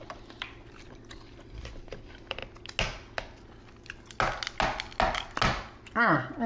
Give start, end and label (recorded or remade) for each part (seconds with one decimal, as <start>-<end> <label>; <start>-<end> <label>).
0.0-2.4 remade; 2.4-6.5 recorded